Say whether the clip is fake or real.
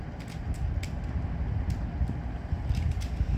real